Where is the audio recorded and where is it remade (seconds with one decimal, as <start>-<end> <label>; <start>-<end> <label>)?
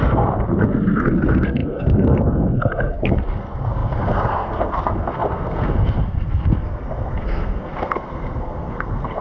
0.0-9.2 remade